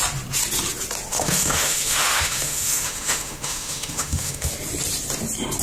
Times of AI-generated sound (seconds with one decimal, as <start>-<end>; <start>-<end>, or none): 1.1-4.5